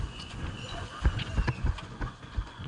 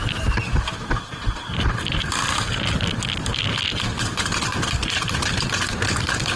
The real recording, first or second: second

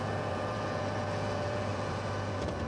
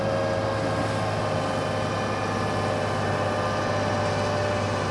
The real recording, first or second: second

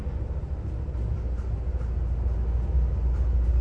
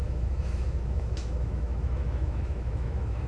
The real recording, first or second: first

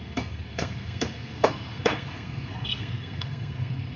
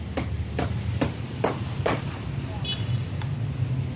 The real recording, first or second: second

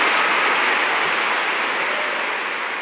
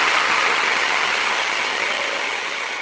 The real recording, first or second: first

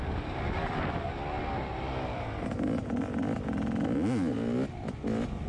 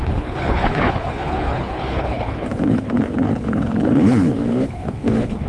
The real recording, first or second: first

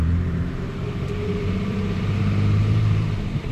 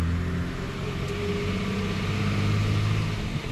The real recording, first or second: second